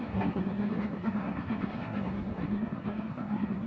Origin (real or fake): fake